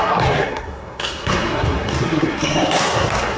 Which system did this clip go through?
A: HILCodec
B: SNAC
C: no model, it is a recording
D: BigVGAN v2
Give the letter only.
B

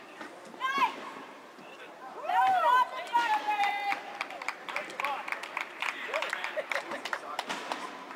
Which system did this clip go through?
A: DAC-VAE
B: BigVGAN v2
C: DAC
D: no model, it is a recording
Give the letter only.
B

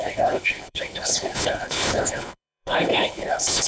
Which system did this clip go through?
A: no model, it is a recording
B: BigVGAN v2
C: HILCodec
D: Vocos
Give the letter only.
C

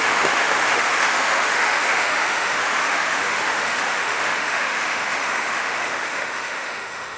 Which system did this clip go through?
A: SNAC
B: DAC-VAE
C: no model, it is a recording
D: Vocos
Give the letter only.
B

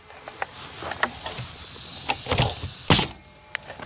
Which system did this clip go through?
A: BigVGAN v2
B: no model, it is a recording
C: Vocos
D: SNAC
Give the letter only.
B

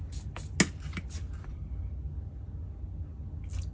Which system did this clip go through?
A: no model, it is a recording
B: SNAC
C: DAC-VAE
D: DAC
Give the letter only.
A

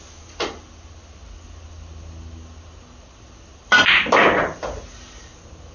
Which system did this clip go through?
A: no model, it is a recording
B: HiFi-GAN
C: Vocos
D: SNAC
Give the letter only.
A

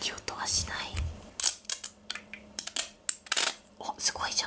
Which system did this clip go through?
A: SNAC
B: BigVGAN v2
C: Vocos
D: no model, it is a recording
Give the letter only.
D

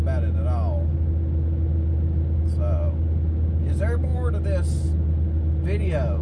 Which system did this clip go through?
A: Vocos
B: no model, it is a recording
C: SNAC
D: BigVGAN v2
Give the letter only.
B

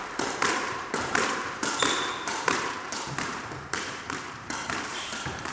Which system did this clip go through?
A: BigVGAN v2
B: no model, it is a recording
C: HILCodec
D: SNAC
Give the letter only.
A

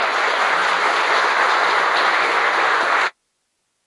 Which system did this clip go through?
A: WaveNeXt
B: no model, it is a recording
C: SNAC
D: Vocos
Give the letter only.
D